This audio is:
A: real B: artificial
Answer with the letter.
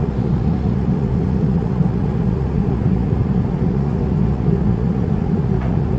B